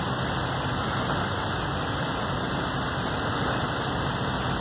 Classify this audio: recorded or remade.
recorded